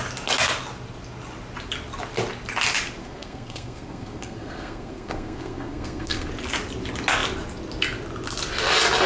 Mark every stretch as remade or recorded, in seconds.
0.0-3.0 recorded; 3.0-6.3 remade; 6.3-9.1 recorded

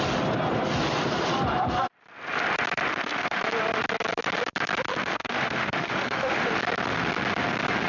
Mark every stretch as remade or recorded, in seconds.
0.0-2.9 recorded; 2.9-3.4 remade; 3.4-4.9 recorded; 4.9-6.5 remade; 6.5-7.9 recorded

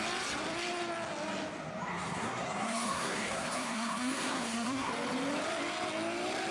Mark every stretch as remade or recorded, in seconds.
0.0-1.9 recorded; 1.9-4.9 remade; 4.9-6.5 recorded

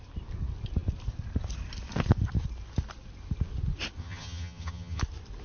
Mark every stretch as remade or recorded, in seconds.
0.0-4.0 recorded; 4.0-5.0 remade; 5.0-5.4 recorded

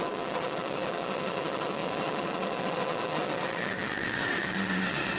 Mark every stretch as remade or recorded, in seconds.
0.0-5.2 remade

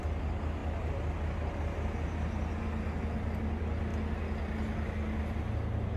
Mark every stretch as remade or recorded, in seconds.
0.0-6.0 recorded

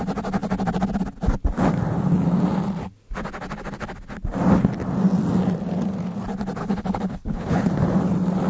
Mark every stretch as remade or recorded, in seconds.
0.0-6.6 recorded; 6.6-7.7 remade; 7.7-8.5 recorded

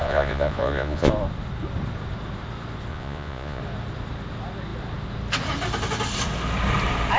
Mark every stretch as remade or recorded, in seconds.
0.0-1.1 remade; 1.1-2.9 recorded; 2.9-3.6 remade; 3.6-7.2 recorded